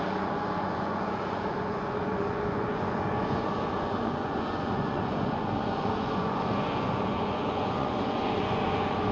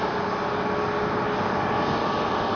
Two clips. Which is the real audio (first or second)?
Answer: second